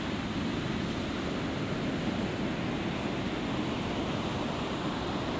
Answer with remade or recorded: recorded